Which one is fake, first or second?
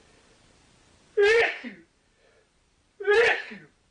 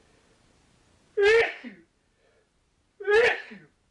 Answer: first